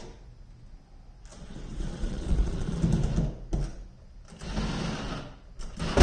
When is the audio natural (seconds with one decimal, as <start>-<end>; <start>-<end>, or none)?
0.0-1.3; 2.8-6.0